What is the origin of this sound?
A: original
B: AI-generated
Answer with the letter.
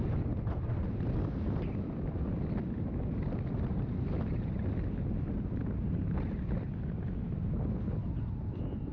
A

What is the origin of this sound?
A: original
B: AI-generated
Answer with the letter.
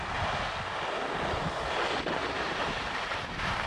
A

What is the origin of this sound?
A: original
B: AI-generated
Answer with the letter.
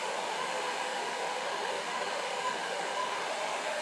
B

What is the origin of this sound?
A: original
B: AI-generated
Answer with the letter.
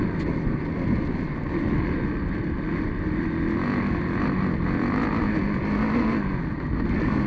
A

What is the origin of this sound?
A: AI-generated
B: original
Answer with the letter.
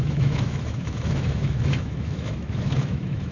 A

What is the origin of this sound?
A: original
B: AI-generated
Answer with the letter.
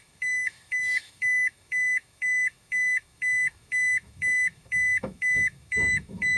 B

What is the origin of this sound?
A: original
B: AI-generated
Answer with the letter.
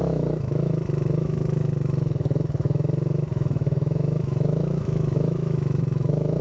B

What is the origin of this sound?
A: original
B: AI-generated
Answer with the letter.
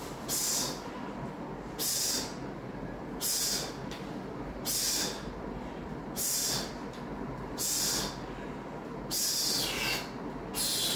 A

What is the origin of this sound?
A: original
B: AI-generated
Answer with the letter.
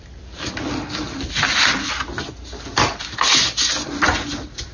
A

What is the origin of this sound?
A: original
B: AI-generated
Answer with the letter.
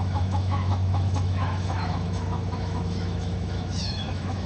B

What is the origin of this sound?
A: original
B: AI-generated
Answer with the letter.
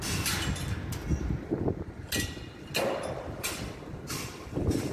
A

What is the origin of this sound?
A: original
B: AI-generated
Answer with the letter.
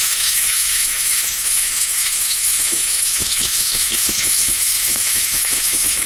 B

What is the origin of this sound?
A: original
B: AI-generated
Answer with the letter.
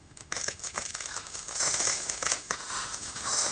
B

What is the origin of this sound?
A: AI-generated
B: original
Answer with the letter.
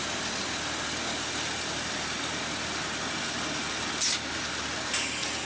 B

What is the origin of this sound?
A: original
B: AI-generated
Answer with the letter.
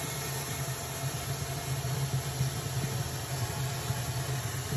A